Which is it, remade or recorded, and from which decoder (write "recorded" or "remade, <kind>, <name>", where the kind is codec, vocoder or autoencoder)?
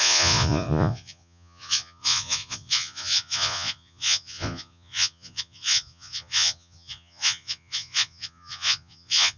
remade, vocoder, Vocos